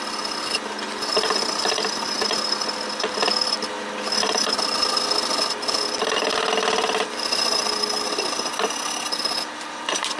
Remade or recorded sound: recorded